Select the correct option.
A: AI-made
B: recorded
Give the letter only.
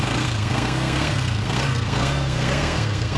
A